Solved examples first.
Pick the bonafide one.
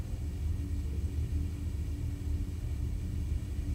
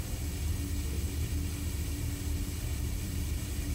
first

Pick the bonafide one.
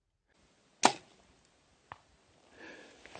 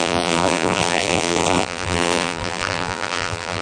first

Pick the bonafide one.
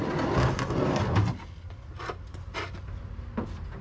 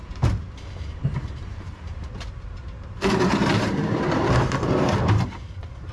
first